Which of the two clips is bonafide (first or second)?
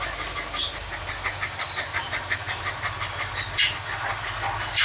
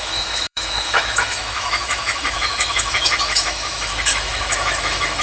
first